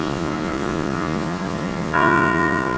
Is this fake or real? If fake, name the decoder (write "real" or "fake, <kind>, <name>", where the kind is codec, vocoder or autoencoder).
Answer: fake, vocoder, Vocos